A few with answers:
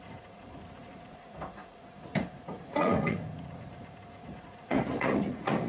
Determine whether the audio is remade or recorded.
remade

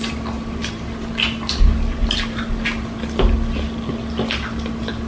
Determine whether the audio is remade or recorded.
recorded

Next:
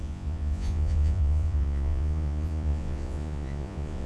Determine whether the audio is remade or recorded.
remade